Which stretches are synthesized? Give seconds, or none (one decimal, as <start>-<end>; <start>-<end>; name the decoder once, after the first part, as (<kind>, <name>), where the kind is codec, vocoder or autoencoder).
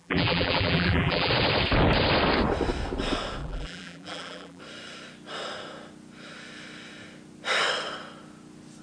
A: 0.0-1.3 (vocoder, BigVGAN v2); 3.4-4.6